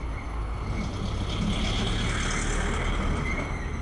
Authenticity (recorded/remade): recorded